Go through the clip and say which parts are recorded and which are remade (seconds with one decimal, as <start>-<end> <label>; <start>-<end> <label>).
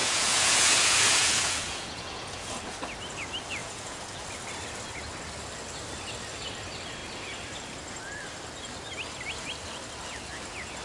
0.0-2.6 remade; 2.6-3.6 recorded; 3.6-4.2 remade; 4.2-10.8 recorded